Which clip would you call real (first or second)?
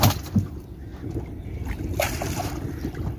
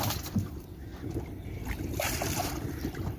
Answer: first